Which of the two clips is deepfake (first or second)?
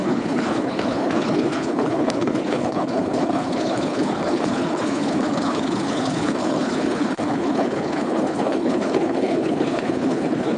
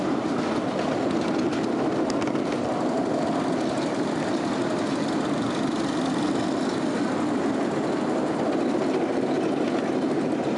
first